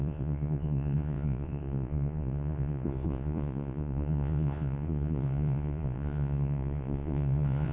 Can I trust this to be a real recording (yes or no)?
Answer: no